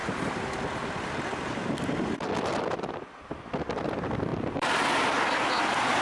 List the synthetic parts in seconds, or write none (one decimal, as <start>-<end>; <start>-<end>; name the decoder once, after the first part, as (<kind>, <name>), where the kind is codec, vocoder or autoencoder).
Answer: 0.0-3.6 (vocoder, BigVGAN v2); 4.3-4.9